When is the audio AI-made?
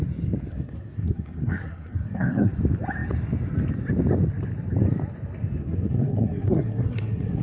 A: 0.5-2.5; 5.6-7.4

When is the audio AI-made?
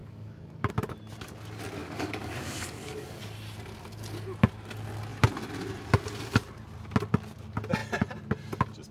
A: 0.0-0.7; 1.8-3.2